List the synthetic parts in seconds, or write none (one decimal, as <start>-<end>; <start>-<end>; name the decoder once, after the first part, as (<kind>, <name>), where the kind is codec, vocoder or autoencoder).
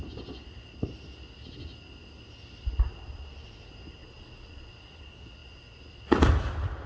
4.0-4.7 (vocoder, Vocos)